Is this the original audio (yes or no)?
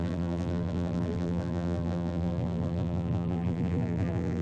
no